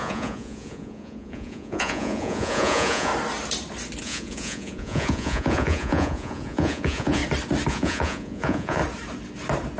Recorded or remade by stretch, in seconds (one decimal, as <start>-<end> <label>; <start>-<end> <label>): 0.0-3.1 remade; 3.1-4.0 recorded; 4.0-7.2 remade; 7.2-7.7 recorded; 7.7-8.8 remade; 8.8-9.8 recorded